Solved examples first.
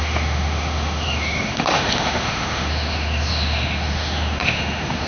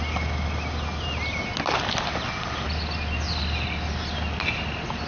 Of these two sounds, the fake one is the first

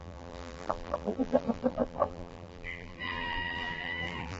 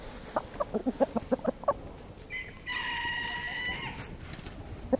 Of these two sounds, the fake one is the first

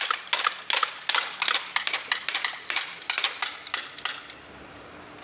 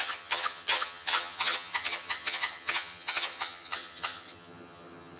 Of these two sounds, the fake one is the second